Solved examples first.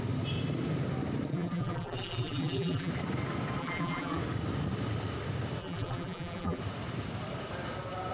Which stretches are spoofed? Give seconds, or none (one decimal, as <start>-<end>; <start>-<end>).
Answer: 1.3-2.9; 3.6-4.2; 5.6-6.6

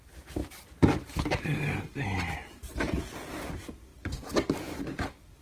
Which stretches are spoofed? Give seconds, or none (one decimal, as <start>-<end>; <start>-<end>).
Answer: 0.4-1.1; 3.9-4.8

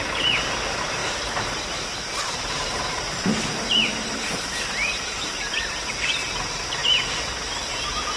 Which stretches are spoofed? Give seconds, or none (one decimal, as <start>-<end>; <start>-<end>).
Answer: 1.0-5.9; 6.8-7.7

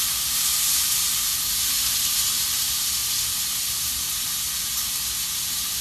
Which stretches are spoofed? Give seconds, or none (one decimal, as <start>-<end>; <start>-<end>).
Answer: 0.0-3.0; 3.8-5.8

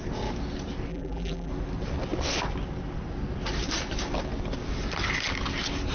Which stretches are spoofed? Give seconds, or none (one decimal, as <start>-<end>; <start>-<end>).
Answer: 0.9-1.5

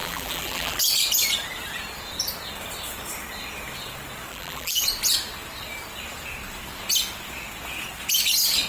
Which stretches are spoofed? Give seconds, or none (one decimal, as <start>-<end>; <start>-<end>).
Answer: 0.0-0.8; 4.3-4.8

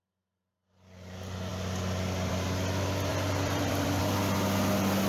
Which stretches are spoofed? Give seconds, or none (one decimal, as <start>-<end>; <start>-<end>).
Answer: 3.1-4.0

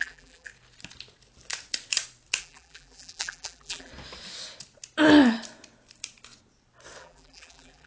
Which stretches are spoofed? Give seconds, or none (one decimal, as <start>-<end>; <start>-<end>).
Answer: 0.0-0.5; 2.4-3.9; 7.0-7.9